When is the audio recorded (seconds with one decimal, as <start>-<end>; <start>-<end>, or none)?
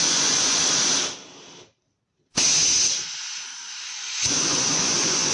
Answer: 0.6-3.8